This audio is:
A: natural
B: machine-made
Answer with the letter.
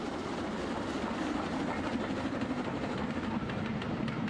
A